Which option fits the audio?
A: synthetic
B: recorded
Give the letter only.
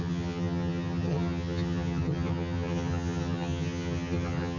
A